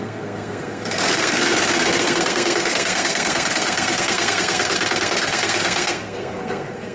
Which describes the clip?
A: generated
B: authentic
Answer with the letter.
A